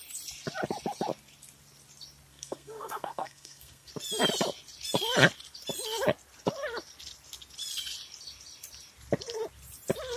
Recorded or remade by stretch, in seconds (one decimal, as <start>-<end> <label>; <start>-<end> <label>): 0.0-2.3 recorded; 2.3-3.9 remade; 3.9-10.2 recorded